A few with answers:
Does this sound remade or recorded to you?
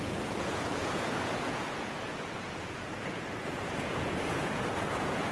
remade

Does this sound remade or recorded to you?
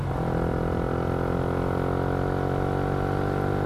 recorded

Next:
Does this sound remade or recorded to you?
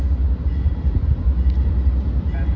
recorded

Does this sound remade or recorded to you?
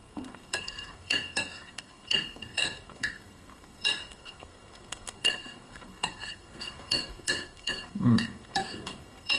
remade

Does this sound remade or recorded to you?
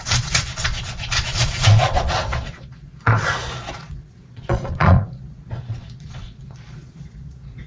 remade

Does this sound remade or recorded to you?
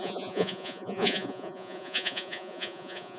remade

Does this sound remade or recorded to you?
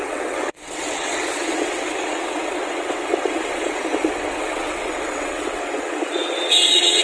remade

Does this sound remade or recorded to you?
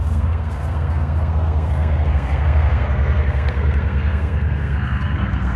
remade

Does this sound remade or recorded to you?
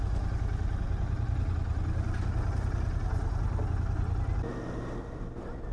recorded